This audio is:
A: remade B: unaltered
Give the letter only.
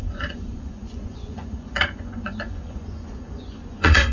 A